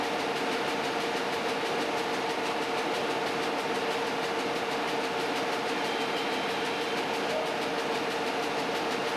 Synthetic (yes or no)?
no